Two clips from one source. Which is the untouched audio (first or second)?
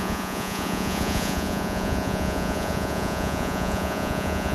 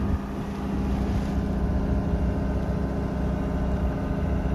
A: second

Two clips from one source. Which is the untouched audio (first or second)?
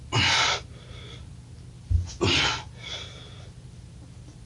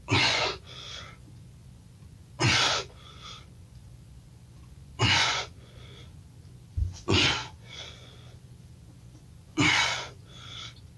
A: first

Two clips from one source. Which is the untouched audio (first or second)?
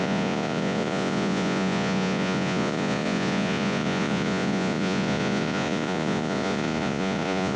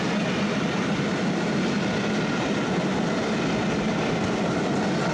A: second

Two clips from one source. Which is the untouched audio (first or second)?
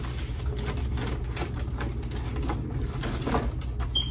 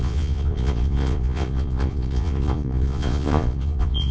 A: first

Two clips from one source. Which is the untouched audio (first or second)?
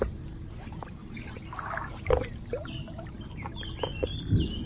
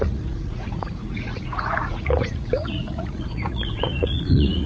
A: first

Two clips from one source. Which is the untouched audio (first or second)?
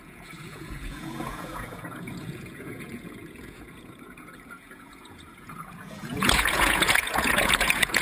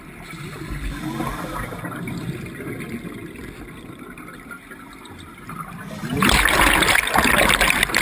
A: second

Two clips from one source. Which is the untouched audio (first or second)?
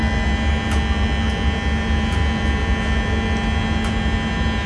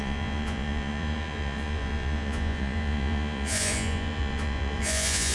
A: first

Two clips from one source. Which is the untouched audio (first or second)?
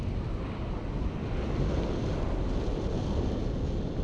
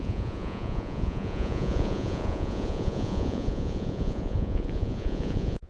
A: first